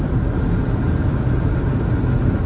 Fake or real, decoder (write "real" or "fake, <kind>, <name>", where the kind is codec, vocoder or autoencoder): real